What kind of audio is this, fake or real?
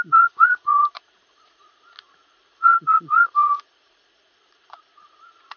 fake